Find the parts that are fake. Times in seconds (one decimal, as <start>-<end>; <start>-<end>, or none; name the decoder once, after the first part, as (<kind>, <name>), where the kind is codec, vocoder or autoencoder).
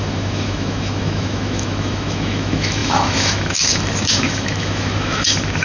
0.0-5.6 (autoencoder, DAC-VAE)